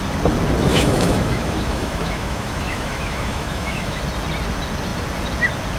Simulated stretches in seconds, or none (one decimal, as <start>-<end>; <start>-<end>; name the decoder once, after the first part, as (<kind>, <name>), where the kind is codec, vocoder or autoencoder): 0.7-4.0 (autoencoder, DAC-VAE)